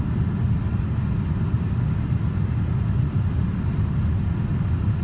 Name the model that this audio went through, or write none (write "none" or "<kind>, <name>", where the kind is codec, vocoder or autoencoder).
none